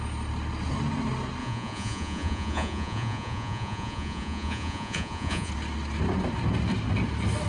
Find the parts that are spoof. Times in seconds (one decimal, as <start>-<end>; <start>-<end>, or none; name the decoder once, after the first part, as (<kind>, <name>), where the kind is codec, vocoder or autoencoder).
1.4-5.5 (vocoder, Vocos)